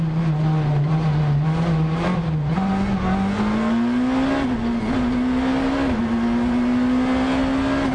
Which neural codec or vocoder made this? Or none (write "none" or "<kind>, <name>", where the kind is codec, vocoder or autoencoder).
none